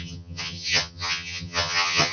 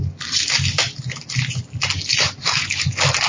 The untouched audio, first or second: second